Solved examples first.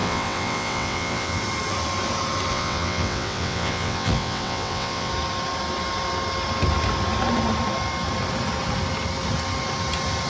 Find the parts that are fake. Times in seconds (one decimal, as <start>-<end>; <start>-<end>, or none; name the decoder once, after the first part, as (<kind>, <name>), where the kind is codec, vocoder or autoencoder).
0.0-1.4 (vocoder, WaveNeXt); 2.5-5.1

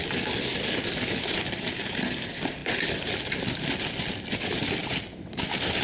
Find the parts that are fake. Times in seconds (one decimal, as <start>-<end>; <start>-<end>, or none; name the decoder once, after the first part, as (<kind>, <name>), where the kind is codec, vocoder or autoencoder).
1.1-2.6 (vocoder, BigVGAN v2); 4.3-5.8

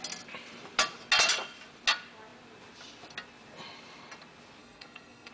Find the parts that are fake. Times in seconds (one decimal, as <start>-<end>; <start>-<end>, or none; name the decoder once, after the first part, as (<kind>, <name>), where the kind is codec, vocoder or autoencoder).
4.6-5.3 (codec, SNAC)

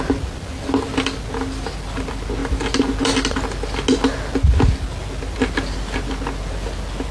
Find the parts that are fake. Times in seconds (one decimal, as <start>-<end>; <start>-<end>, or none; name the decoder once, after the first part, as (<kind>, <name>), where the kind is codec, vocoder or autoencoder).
none

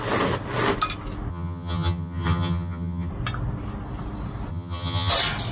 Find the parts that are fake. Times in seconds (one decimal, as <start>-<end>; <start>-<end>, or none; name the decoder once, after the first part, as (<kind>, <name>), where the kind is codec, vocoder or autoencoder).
1.3-3.1 (vocoder, HiFi-GAN); 4.5-5.1

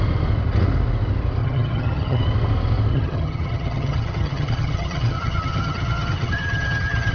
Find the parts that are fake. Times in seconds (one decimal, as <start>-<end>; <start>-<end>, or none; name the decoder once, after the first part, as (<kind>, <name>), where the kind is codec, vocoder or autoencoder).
1.4-2.2 (vocoder, HiFi-GAN); 2.9-7.1

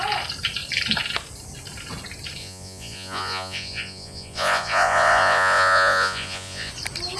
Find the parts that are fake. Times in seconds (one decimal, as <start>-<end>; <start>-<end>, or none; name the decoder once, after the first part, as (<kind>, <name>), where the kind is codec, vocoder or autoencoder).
2.4-6.7 (vocoder, Vocos)

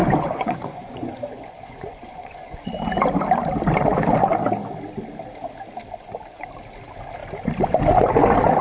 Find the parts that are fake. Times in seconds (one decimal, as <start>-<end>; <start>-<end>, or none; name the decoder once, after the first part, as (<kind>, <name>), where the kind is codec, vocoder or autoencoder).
0.0-2.7 (vocoder, Vocos)